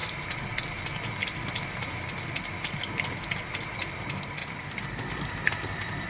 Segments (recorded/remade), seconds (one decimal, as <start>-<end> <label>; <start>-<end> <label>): 0.0-4.4 recorded; 4.4-6.1 remade